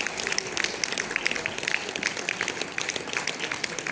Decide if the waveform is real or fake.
real